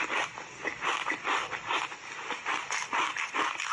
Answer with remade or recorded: recorded